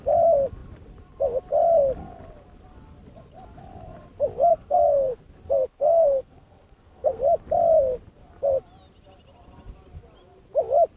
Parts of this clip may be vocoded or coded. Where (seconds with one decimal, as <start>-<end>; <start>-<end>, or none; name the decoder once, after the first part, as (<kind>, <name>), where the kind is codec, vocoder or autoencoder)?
4.5-5.2 (codec, SNAC); 5.7-7.2